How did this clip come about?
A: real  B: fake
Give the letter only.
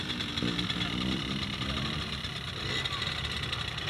B